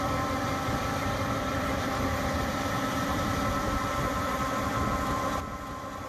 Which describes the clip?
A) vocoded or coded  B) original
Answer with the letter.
A